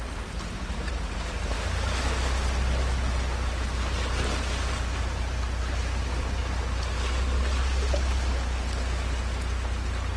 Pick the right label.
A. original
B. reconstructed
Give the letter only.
A